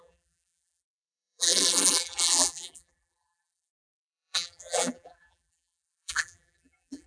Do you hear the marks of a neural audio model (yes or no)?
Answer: yes